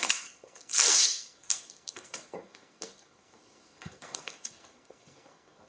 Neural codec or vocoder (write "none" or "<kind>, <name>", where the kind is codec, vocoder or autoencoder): codec, SNAC